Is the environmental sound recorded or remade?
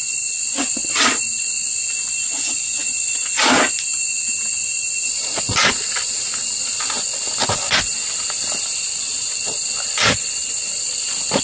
recorded